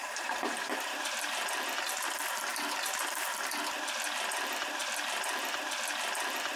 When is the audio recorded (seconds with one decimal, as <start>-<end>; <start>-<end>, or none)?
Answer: 1.5-2.5; 3.5-6.6

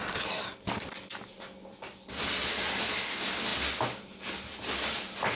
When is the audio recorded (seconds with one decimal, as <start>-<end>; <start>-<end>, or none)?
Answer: 0.0-5.3

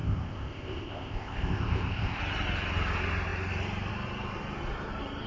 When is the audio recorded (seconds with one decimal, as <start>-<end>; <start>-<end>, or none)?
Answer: 2.2-5.3

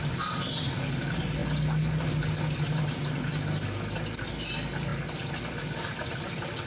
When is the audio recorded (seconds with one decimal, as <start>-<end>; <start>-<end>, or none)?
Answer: 1.4-4.5; 4.9-5.6

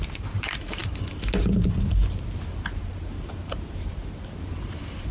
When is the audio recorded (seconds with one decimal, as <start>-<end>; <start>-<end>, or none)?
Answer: 0.8-1.4; 2.0-4.4

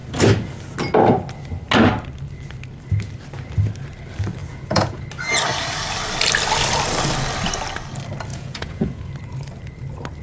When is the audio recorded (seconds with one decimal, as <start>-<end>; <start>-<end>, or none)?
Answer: 0.0-4.4; 5.0-8.3; 9.0-10.2